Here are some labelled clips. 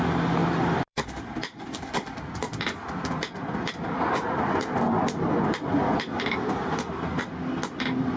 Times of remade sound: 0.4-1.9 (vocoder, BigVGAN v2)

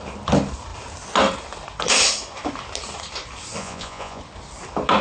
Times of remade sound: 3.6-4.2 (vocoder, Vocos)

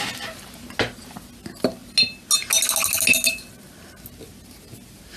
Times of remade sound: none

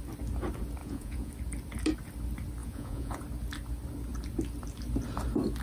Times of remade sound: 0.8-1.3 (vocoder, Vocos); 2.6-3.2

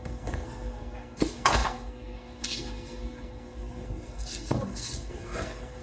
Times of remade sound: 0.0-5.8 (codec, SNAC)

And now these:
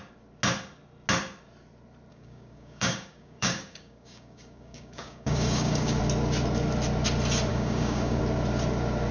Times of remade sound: 2.1-6.0 (codec, DAC); 7.5-8.2